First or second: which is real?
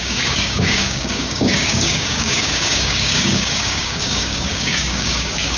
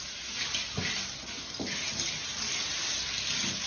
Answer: second